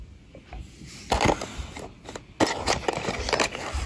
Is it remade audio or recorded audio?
recorded